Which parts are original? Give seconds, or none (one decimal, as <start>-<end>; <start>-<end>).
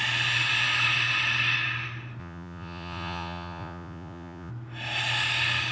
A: 0.0-2.2; 4.5-5.7